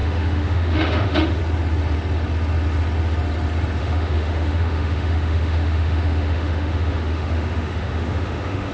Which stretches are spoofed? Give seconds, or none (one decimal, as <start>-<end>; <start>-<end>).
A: 0.0-1.4; 3.8-8.7